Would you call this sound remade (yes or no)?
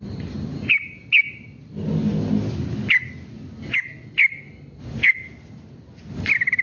no